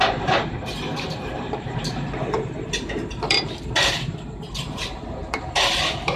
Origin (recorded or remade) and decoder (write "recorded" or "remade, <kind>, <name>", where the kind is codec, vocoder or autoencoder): remade, vocoder, BigVGAN v2